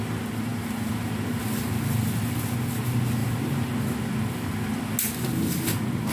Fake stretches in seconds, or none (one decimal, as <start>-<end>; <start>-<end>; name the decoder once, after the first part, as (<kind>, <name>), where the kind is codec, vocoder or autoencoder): 3.2-4.1 (vocoder, BigVGAN v2)